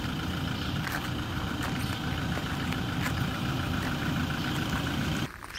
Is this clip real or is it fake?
real